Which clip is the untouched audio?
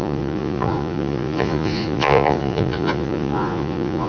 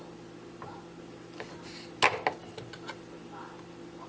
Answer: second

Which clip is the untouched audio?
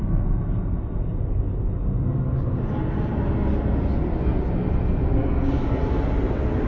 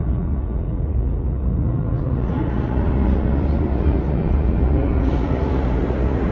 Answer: first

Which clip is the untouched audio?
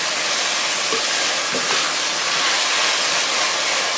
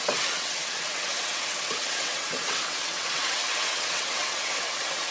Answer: first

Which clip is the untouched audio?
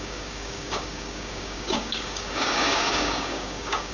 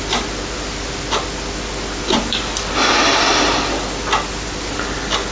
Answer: second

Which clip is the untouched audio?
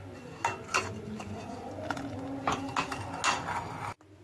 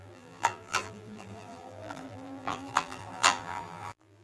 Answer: first